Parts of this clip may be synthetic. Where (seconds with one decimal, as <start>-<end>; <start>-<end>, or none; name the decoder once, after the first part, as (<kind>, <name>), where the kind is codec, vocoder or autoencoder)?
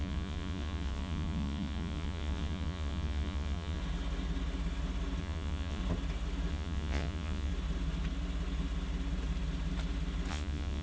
0.0-3.8 (vocoder, Vocos); 5.2-5.8; 6.5-7.5; 10.3-10.8